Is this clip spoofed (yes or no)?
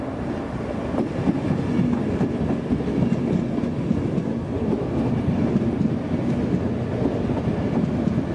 no